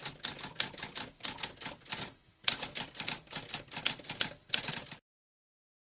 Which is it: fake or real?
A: real